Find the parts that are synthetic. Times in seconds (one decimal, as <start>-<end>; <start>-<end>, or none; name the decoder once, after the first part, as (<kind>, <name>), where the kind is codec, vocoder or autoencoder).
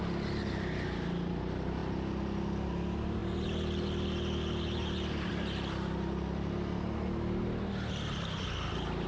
none